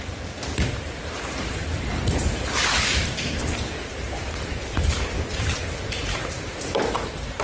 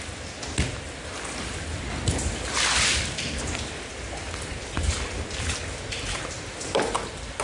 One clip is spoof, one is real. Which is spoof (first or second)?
first